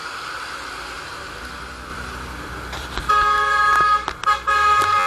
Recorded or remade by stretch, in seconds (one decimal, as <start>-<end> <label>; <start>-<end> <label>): 0.0-1.9 recorded; 1.9-3.1 remade; 3.1-5.1 recorded